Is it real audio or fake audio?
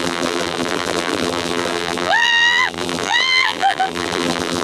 fake